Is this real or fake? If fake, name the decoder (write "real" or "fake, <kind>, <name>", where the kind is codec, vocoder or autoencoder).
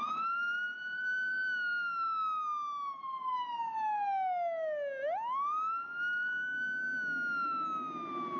real